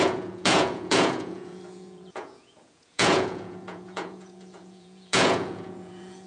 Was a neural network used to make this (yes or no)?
yes